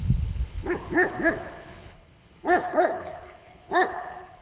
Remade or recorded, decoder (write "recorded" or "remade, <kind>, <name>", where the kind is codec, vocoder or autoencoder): remade, codec, HILCodec